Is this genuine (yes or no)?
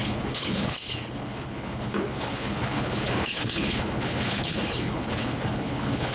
no